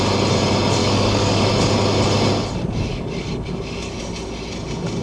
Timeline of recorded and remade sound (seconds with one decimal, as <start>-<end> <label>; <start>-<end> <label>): 0.0-0.8 recorded; 0.8-1.5 remade; 1.5-2.9 recorded; 2.9-3.9 remade; 3.9-5.0 recorded